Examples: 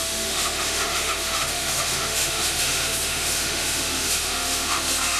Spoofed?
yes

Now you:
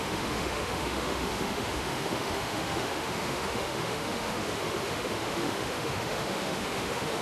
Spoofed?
yes